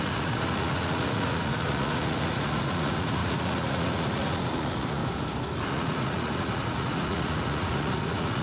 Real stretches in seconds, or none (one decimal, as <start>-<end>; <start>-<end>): 5.0-5.6

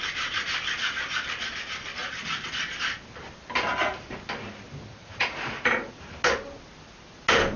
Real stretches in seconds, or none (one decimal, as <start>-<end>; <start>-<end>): 0.0-5.0; 6.0-7.6

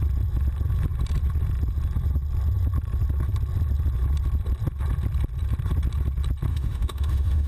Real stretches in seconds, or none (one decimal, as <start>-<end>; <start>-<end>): 0.0-6.5

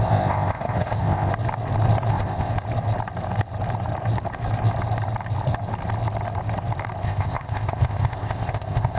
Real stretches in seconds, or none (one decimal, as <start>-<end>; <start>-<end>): 1.3-2.1; 2.5-7.0

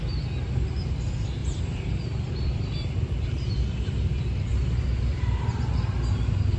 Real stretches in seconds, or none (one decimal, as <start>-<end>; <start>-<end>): 0.0-1.4; 3.5-6.6

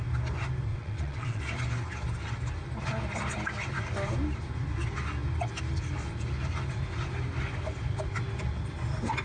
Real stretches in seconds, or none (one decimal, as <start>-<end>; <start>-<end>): 0.0-0.7; 1.4-9.2

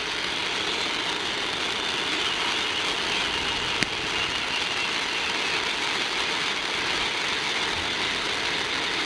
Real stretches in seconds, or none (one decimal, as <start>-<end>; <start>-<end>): 0.0-9.1

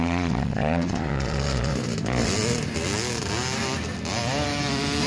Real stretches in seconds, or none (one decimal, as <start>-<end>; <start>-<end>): 1.7-5.1